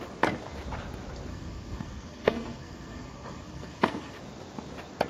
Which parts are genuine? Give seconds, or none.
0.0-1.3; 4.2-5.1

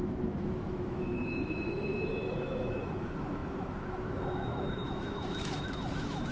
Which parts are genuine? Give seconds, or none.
none

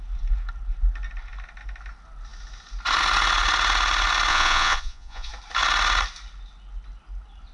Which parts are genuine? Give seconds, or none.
0.0-4.3; 5.3-7.5

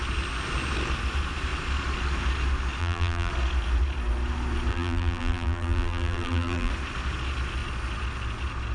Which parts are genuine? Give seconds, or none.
0.0-2.8; 3.3-4.7; 6.7-8.7

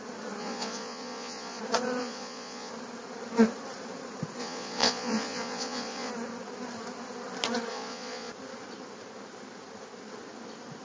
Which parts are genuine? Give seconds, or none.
0.0-0.4; 1.6-2.0; 2.7-4.4; 6.1-7.7; 8.3-10.8

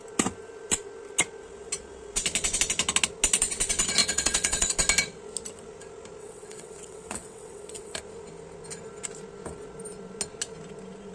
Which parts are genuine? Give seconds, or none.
0.0-4.0; 4.7-6.2; 8.0-11.1